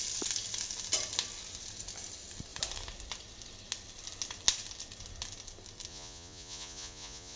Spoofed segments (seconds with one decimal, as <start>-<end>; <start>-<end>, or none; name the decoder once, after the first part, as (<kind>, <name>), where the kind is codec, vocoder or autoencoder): 5.9-7.4 (vocoder, Vocos)